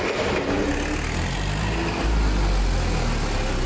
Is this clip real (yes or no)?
yes